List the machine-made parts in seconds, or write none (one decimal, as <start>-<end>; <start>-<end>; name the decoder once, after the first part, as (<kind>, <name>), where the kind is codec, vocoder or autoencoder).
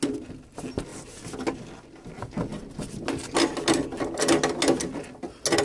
none